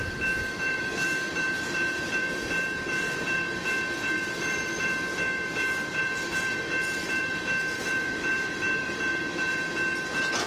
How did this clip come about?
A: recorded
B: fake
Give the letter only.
B